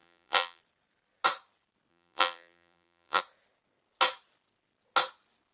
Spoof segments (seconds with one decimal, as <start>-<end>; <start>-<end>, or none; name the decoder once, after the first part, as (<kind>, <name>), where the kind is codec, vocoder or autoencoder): 0.0-0.6 (vocoder, BigVGAN v2); 1.9-3.2